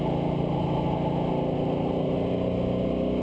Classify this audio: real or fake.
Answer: real